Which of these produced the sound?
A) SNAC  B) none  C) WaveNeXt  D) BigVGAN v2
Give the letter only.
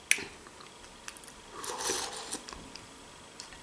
B